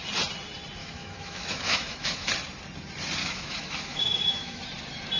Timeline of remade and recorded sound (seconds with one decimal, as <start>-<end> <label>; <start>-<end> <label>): 0.0-0.8 recorded; 0.8-2.3 remade; 2.3-3.2 recorded; 3.2-4.6 remade; 4.6-5.2 recorded